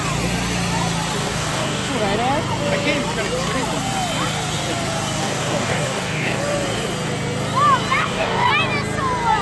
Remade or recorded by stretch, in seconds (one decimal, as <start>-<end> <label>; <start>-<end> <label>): 0.0-1.2 recorded; 1.2-1.9 remade; 1.9-5.2 recorded; 5.2-6.4 remade; 6.4-8.0 recorded; 8.0-8.5 remade; 8.5-9.4 recorded